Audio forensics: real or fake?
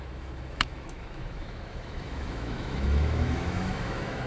fake